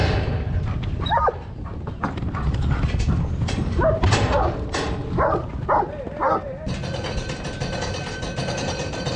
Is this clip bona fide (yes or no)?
yes